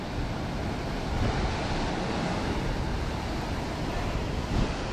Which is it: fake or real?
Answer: real